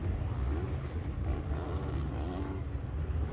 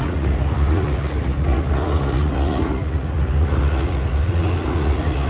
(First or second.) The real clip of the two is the first